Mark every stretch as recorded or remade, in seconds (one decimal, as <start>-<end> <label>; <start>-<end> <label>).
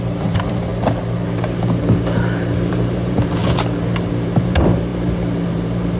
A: 0.0-0.7 remade; 0.7-2.7 recorded; 2.7-3.4 remade; 3.4-4.1 recorded; 4.1-6.0 remade